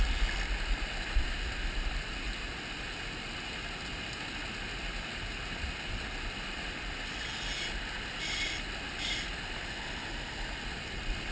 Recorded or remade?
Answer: recorded